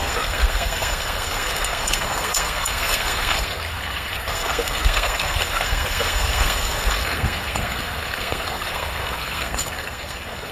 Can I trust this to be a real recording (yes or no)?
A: no